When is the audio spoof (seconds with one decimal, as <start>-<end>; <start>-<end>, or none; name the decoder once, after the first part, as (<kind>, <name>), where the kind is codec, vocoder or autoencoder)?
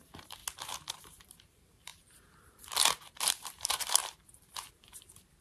0.0-0.4 (vocoder, BigVGAN v2); 0.9-4.0; 5.0-5.4